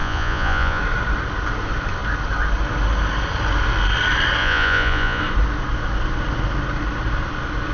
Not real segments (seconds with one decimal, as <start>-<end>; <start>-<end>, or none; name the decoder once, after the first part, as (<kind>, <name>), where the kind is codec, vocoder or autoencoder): 0.0-0.8 (vocoder, Vocos); 4.4-5.2